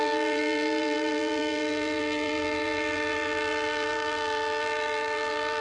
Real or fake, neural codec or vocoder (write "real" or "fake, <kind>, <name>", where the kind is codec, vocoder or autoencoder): fake, vocoder, BigVGAN v2